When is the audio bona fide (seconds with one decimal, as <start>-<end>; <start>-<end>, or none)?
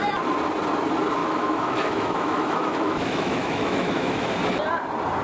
0.0-1.2; 4.3-5.2